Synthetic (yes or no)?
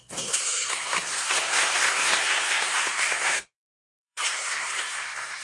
yes